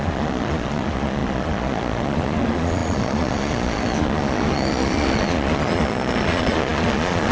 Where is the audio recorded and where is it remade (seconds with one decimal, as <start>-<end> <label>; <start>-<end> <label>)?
0.0-7.3 remade